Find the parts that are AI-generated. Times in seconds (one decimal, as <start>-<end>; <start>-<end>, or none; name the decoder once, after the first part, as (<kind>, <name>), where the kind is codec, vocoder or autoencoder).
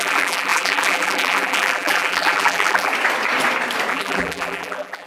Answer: 0.0-2.9 (vocoder, BigVGAN v2); 3.9-5.1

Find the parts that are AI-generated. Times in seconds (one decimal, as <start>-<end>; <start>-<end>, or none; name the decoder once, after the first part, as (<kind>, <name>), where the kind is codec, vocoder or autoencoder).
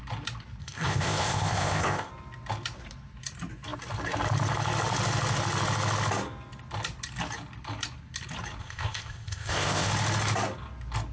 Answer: 0.6-2.1 (codec, ZipCodec); 8.6-9.9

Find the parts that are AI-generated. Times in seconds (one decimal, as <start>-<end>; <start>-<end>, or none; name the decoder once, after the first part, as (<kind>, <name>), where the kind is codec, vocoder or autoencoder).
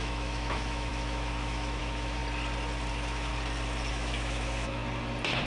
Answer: 0.0-2.2 (autoencoder, DAC-VAE); 2.9-3.3; 3.9-4.8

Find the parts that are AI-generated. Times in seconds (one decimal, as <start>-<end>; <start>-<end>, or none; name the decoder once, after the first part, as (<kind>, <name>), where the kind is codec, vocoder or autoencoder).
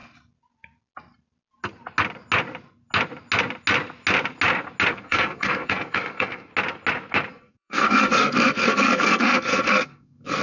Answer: 4.9-6.5 (codec, SNAC); 7.3-10.4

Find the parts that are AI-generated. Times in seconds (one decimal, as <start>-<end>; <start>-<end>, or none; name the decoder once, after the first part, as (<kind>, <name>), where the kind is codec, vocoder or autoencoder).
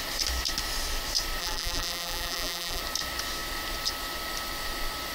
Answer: 1.4-2.8 (vocoder, BigVGAN v2)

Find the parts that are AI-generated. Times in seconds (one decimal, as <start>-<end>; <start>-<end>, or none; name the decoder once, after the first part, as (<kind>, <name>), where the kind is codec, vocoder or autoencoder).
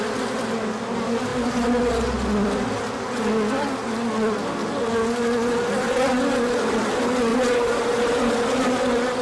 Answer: 7.3-8.4 (vocoder, BigVGAN v2)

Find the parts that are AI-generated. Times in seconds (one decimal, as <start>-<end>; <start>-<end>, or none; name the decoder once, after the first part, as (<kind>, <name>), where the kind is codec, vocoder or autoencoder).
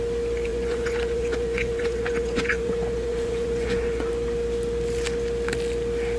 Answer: 0.5-4.1 (vocoder, Vocos)